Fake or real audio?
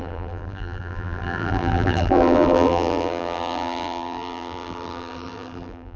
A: fake